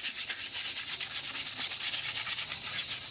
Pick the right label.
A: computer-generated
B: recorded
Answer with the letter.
B